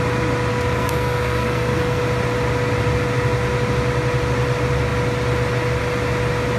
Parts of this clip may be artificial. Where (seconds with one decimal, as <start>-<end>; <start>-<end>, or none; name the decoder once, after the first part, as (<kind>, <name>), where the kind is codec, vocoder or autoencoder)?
0.5-2.0 (codec, SNAC)